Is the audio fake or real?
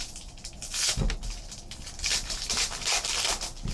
real